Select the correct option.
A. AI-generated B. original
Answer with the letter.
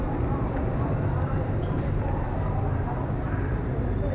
A